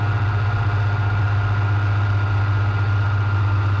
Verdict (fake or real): real